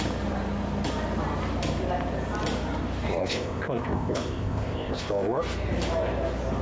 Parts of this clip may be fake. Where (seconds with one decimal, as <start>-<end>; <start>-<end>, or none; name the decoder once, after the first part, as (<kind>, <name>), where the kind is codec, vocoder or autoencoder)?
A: 3.2-5.4 (codec, ZipCodec)